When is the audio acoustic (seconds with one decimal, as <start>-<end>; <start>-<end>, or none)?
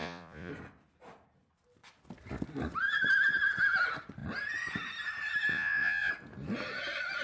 0.5-5.5; 6.1-7.2